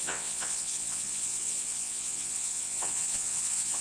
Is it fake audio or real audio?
fake